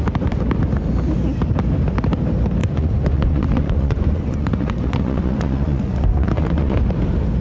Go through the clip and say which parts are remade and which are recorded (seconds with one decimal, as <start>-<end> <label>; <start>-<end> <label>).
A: 0.0-2.6 recorded; 2.6-6.8 remade; 6.8-7.4 recorded